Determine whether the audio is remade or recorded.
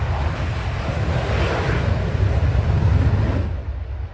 recorded